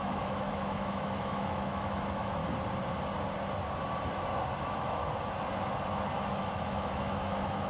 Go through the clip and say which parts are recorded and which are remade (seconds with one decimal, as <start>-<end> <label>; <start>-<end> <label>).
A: 0.0-2.4 remade; 2.4-4.6 recorded; 4.6-5.0 remade; 5.0-6.2 recorded; 6.2-7.7 remade